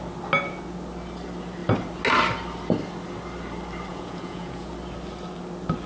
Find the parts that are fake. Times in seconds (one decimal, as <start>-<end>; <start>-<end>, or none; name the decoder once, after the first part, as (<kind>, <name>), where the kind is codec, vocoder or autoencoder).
3.9-4.7 (vocoder, Vocos)